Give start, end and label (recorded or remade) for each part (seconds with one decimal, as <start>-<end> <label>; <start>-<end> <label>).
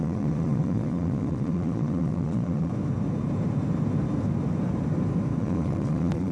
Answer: 0.0-2.7 remade; 2.7-5.4 recorded; 5.4-6.3 remade